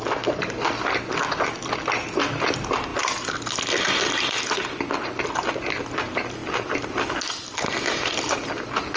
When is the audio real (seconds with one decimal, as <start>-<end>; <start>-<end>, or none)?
0.0-9.0